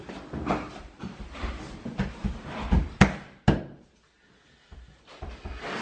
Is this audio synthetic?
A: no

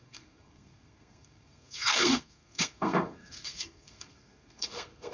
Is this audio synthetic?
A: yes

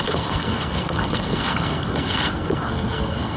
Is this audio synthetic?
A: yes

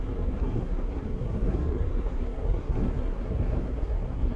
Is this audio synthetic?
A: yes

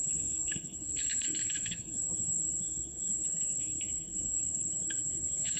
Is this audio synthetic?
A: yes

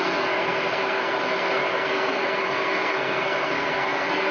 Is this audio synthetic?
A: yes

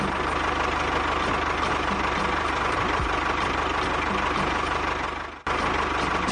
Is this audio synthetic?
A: no